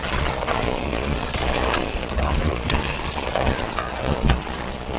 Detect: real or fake fake